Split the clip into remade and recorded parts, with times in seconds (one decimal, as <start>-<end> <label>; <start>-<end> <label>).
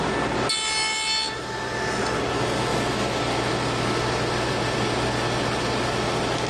0.0-2.7 recorded; 2.7-3.2 remade; 3.2-6.5 recorded